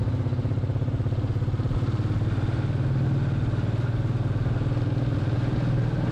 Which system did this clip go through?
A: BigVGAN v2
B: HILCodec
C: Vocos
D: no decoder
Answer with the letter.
D